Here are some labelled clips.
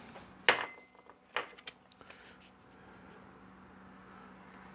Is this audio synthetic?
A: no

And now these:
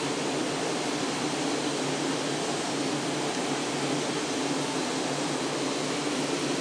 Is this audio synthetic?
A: no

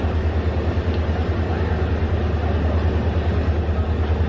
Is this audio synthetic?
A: no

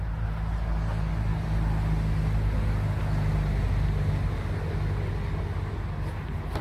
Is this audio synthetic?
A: no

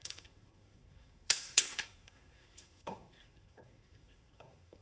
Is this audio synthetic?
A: yes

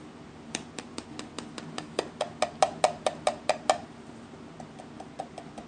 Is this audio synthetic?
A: no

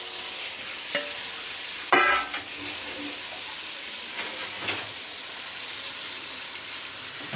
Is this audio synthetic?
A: no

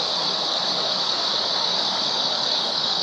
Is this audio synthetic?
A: yes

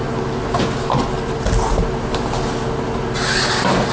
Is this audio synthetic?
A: no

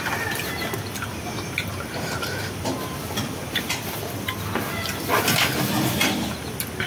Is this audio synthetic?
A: no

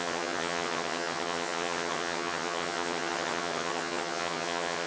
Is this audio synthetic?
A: yes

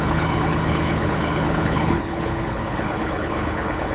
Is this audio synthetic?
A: yes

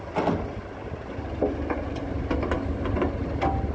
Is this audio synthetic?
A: no